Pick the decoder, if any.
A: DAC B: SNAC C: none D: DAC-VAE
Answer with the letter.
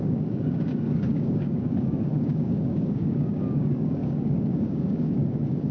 A